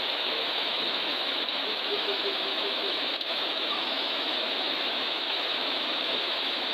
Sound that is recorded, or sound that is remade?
remade